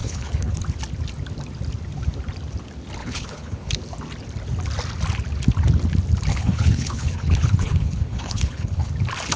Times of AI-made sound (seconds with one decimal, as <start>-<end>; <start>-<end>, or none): 0.0-0.6; 3.0-3.7; 6.3-8.9